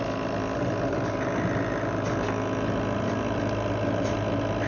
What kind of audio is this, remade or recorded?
recorded